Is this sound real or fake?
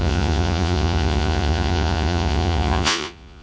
fake